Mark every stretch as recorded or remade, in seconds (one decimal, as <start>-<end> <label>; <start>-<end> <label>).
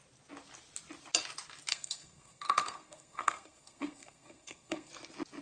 0.0-1.7 recorded; 1.7-4.9 remade; 4.9-5.4 recorded